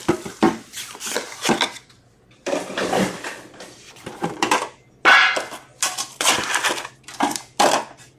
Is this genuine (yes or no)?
yes